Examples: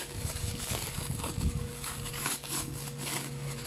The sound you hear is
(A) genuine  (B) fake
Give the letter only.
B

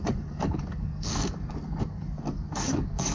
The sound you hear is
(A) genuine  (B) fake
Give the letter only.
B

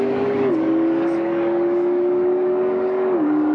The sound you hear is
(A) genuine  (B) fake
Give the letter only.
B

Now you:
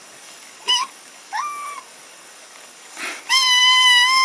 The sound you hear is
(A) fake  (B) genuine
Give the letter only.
A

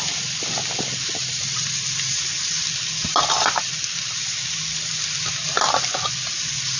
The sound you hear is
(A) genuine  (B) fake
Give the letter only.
A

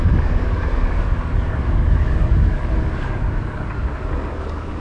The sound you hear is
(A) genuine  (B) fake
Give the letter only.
B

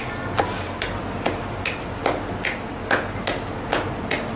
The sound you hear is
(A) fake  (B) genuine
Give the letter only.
B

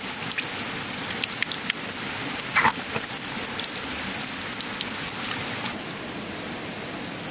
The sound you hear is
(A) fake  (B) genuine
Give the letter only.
B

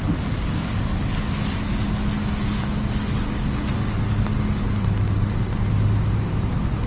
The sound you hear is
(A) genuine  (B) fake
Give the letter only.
A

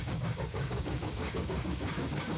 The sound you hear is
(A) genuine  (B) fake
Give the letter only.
B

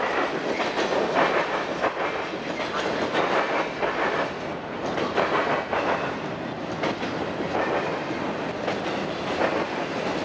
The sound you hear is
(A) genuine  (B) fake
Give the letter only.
A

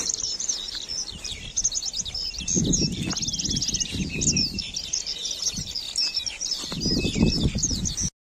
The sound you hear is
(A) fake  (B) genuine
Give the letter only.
B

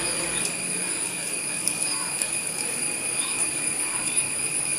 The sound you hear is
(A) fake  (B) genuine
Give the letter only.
A